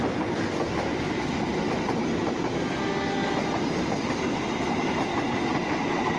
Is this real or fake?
real